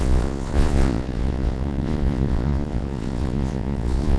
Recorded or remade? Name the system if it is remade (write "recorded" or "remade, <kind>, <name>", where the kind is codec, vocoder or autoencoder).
remade, vocoder, Vocos